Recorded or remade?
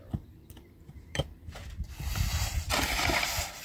remade